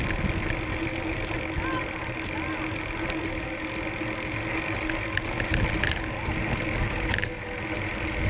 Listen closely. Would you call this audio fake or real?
real